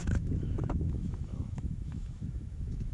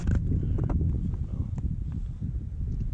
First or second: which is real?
second